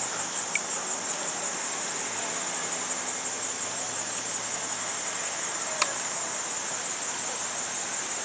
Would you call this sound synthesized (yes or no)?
no